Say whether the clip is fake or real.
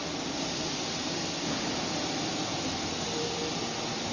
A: real